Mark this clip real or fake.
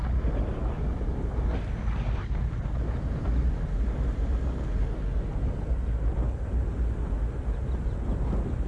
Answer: real